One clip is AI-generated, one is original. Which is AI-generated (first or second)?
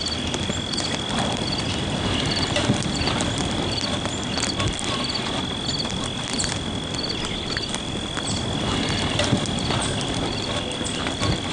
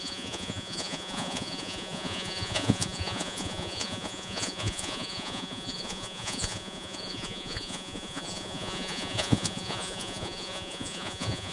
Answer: second